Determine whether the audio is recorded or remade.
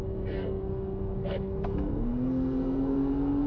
remade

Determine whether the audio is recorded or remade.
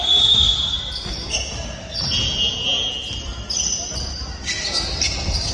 recorded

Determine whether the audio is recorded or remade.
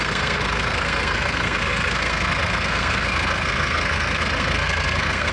remade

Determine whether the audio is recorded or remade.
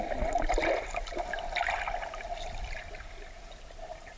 recorded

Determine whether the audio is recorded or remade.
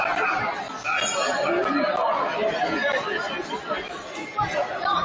recorded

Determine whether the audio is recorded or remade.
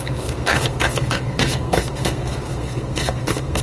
remade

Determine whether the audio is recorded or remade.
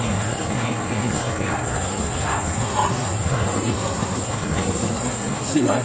remade